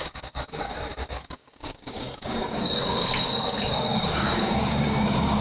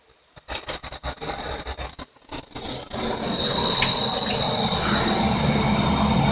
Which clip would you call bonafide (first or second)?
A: second